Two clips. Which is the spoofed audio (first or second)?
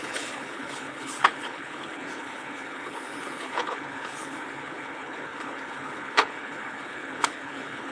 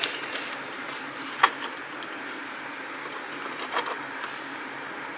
first